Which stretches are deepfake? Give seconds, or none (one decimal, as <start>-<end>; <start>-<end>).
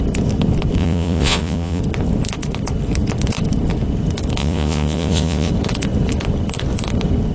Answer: 0.8-1.8; 4.4-5.5